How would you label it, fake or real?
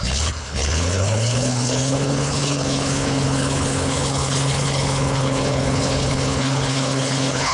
fake